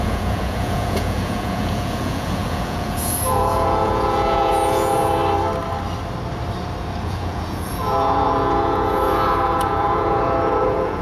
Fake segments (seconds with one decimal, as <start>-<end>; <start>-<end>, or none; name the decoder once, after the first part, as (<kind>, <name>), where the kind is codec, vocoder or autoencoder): 0.0-5.2 (vocoder, Vocos); 7.0-11.0